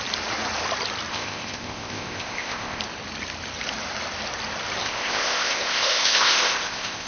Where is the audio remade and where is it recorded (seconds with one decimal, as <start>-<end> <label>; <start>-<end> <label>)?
0.0-1.1 recorded; 1.1-2.8 remade; 2.8-4.8 recorded; 4.8-7.1 remade

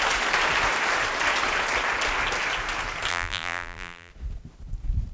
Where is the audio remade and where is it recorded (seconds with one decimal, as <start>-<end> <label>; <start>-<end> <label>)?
0.0-3.1 recorded; 3.1-4.1 remade; 4.1-5.1 recorded

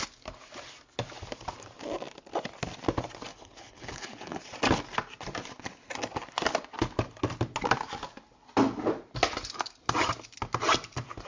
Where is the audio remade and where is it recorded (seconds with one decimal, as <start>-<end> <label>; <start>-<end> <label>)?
0.0-3.3 recorded; 3.3-4.4 remade; 4.4-11.3 recorded